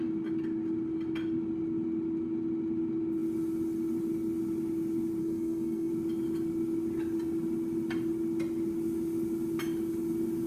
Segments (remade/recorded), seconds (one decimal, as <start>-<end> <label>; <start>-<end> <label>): 0.0-5.2 recorded; 5.2-5.9 remade; 5.9-10.5 recorded